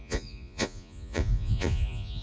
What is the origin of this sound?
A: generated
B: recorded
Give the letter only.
A